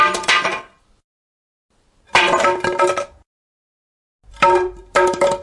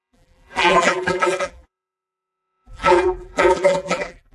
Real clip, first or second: first